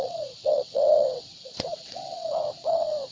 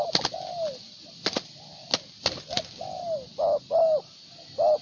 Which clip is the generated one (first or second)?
first